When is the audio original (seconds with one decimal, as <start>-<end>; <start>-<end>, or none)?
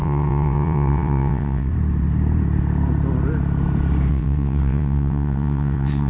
1.7-4.1